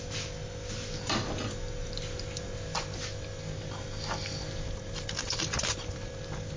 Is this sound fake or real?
real